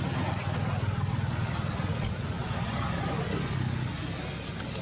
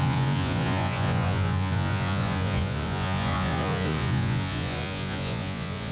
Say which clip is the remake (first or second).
second